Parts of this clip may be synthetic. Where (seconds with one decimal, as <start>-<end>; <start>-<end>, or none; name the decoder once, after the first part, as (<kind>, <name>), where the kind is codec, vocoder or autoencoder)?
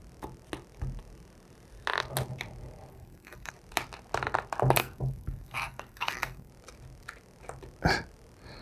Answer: 2.9-3.5 (codec, SNAC); 4.8-6.5